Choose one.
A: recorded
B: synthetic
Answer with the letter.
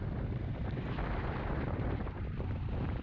B